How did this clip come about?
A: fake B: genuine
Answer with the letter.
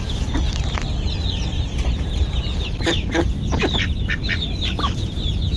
B